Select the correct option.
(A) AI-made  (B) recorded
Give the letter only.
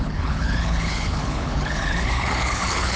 A